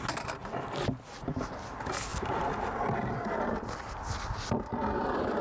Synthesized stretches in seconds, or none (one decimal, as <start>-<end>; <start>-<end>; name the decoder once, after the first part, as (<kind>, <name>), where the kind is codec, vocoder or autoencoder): 0.4-1.5 (vocoder, BigVGAN v2); 2.1-3.3